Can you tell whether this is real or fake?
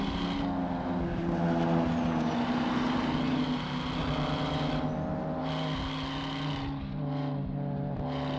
real